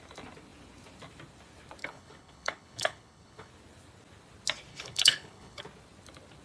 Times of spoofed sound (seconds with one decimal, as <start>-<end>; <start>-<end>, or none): 1.8-3.5; 4.7-5.6